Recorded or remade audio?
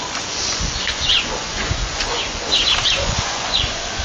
remade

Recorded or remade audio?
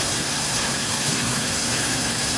remade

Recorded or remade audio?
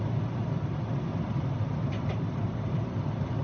recorded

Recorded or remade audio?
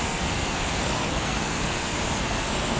remade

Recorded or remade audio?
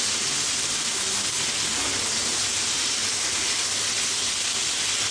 recorded